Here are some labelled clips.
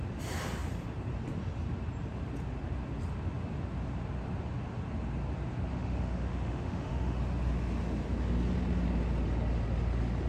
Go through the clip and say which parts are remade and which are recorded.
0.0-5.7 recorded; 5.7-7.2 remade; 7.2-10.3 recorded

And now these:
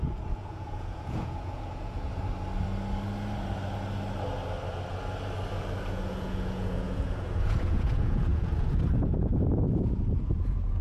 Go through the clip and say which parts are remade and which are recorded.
0.0-2.1 remade; 2.1-5.9 recorded; 5.9-10.8 remade

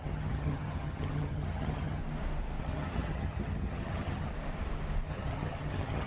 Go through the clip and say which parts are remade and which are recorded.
0.0-2.0 remade; 2.0-2.6 recorded; 2.6-4.3 remade; 4.3-5.1 recorded; 5.1-6.1 remade

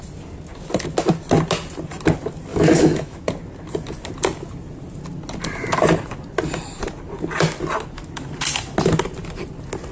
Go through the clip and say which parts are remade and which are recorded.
0.0-2.5 recorded; 2.5-3.3 remade; 3.3-9.9 recorded

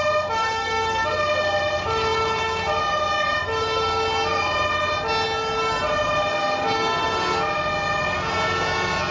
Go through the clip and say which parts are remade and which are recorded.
0.0-9.1 recorded

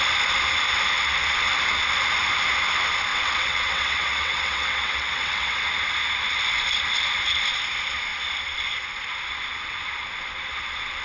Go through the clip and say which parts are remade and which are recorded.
0.0-3.1 recorded; 3.1-5.6 remade; 5.6-11.0 recorded

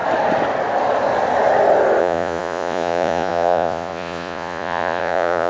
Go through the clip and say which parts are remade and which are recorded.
0.0-2.0 recorded; 2.0-5.5 remade